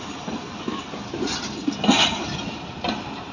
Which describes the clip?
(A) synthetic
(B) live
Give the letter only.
B